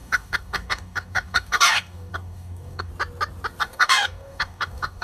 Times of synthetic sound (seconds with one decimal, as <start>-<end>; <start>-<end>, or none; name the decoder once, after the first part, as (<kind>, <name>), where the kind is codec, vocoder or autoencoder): 0.0-2.9 (codec, DAC); 3.6-5.0

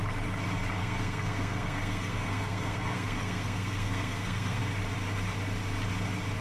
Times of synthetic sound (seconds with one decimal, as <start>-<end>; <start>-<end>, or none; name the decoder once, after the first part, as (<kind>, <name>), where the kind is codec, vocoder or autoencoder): 0.8-4.6 (codec, SNAC)

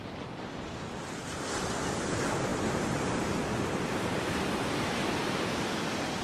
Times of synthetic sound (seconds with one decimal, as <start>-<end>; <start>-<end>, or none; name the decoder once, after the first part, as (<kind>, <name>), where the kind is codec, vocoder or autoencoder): none

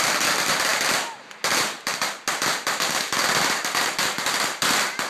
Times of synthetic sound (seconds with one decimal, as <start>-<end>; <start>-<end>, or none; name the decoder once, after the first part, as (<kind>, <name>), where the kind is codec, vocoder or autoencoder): none

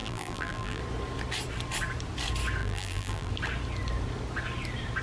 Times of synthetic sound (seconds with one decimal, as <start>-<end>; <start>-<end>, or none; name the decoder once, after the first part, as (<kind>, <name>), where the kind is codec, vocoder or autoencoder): 0.0-0.8 (vocoder, BigVGAN v2); 2.6-3.3

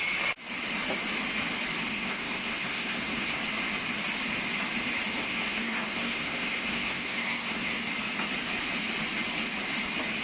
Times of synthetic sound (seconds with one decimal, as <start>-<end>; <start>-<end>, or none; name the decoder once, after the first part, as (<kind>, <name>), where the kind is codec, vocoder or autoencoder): 1.9-3.4 (codec, SNAC); 5.2-7.8

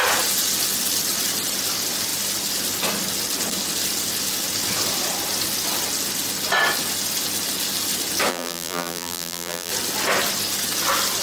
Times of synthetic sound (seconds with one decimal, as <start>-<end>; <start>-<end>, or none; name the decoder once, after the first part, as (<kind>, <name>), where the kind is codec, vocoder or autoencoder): 8.3-9.7 (vocoder, BigVGAN v2)

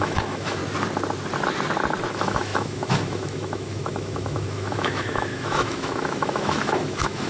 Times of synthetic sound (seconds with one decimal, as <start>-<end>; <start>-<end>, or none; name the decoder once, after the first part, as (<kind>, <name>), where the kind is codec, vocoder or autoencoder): 0.0-0.6 (autoencoder, DAC-VAE); 2.1-7.3